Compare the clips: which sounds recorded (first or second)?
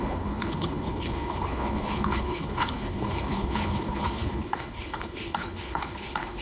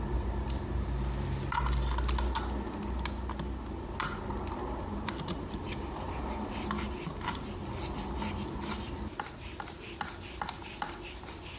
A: second